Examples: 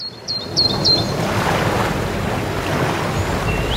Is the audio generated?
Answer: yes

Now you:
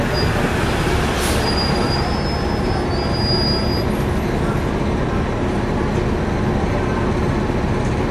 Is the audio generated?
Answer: no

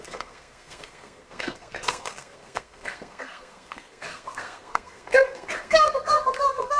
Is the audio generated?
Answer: yes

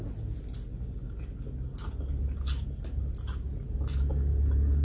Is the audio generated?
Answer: no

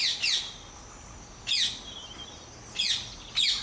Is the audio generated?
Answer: no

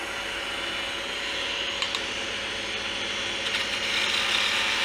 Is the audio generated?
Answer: no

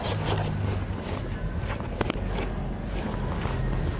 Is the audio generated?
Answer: no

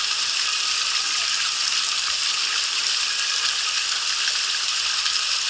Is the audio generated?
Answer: no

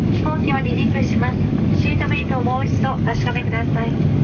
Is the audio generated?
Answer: yes